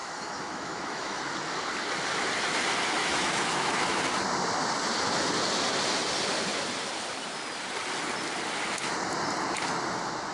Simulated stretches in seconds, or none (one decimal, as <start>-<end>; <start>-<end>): 0.0-1.2; 3.0-4.0